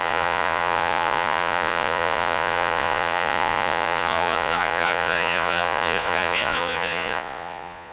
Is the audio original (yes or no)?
no